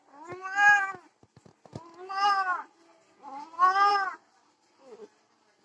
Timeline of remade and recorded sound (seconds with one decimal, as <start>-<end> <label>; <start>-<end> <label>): 0.0-5.6 recorded